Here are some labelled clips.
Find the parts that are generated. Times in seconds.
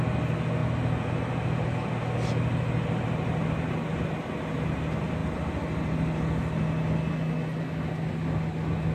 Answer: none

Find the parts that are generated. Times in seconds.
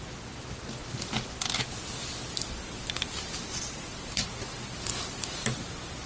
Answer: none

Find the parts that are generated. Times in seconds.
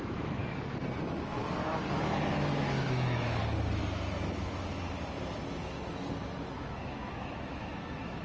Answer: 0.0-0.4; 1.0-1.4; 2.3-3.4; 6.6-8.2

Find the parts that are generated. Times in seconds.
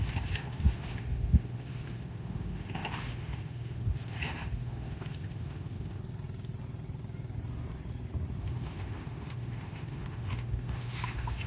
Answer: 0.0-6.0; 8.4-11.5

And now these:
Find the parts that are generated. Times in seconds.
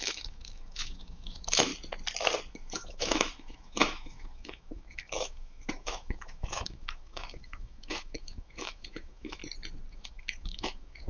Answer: 0.0-1.7; 2.5-9.4; 9.9-11.1